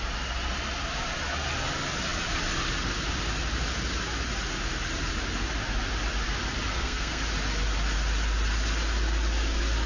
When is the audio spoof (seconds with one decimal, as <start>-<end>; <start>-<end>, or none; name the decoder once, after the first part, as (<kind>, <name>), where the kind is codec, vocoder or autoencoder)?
6.7-7.2 (codec, SNAC)